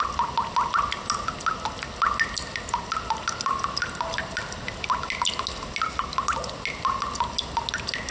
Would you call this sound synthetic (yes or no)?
no